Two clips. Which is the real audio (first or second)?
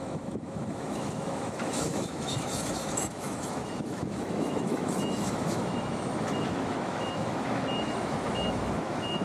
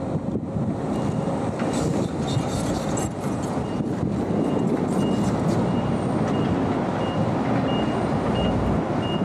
second